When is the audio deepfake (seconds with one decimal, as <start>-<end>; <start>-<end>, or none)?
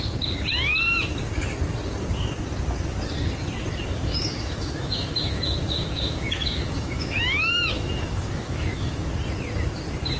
3.9-9.1